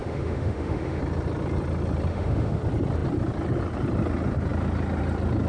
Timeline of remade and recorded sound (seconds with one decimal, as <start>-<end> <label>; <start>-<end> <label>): 0.0-1.0 remade; 1.0-2.1 recorded; 2.1-2.6 remade; 2.6-5.5 recorded